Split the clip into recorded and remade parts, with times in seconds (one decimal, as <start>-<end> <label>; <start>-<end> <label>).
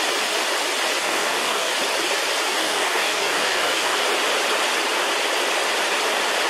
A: 0.0-1.0 recorded; 1.0-1.7 remade; 1.7-2.6 recorded; 2.6-4.0 remade; 4.0-6.5 recorded